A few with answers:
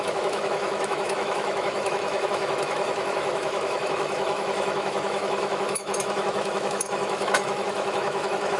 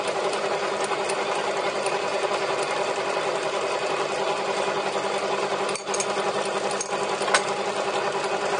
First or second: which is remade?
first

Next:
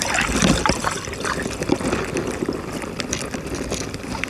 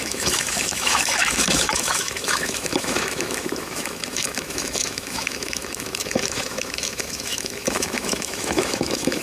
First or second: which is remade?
second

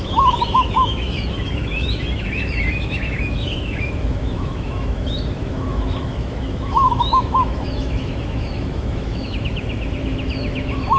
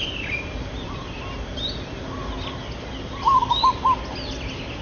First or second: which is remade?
first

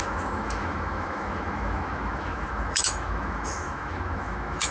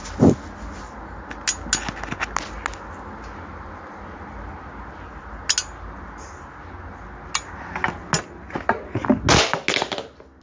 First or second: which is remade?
first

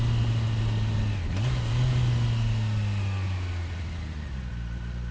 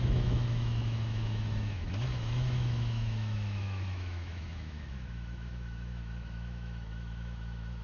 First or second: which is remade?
second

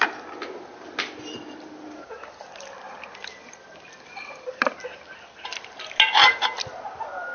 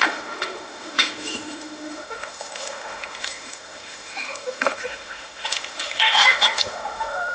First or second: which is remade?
second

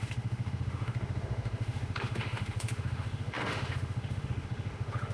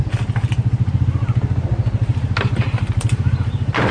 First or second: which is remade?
first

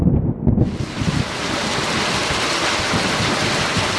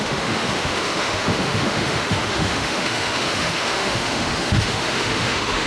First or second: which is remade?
second